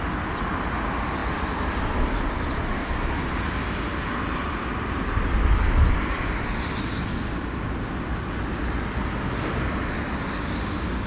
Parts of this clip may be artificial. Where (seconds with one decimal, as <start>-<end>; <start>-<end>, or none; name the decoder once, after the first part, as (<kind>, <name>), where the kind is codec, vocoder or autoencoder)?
none